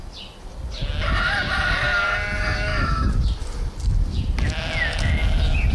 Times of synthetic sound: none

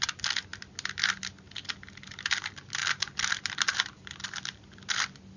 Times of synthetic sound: none

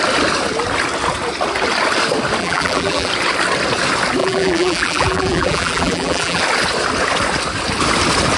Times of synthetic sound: 2.4-3.1 (vocoder, BigVGAN v2); 4.2-6.4

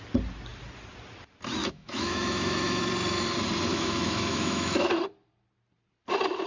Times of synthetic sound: 1.6-2.8 (autoencoder, DAC-VAE); 3.7-4.9

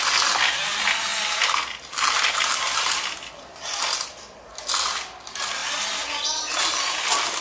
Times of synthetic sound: none

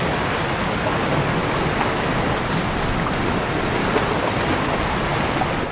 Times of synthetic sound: none